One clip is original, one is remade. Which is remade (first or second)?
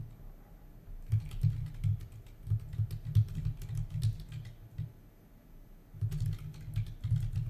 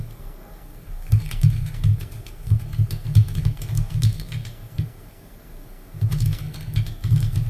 second